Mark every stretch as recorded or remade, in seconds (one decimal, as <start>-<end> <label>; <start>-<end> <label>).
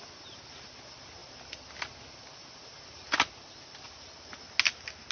0.0-5.1 recorded